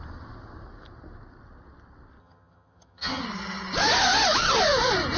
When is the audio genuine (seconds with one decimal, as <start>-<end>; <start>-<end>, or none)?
0.0-2.2; 3.2-5.2